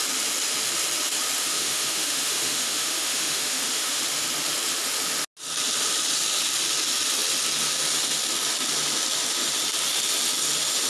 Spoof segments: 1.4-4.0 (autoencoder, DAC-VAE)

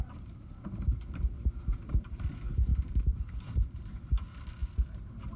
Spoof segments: 0.0-0.8 (vocoder, BigVGAN v2); 1.7-2.3; 2.7-3.9; 4.6-5.4

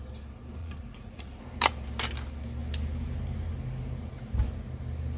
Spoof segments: 0.6-1.4 (vocoder, Vocos)

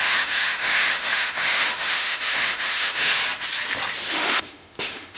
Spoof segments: 0.0-3.2 (autoencoder, DAC-VAE); 4.1-5.2

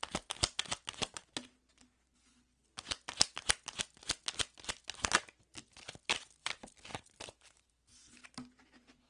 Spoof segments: 6.9-7.7 (vocoder, BigVGAN v2)

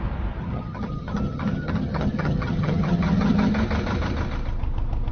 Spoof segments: 0.4-3.5 (vocoder, HiFi-GAN)

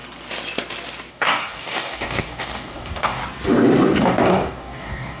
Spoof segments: 1.1-3.2 (codec, DAC); 4.0-5.2

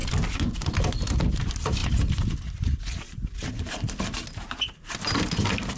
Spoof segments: none